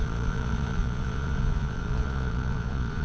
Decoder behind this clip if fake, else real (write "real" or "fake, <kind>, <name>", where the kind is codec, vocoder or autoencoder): fake, vocoder, Vocos